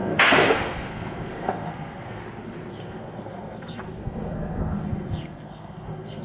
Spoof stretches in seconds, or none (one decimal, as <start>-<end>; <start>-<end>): 0.0-2.2; 2.7-6.2